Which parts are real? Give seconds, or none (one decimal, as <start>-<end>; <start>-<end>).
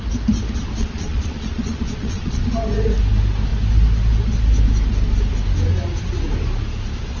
0.0-0.8; 2.5-7.2